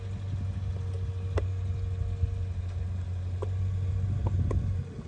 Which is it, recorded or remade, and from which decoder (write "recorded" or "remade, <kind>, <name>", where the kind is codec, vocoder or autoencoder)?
recorded